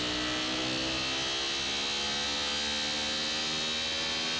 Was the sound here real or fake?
real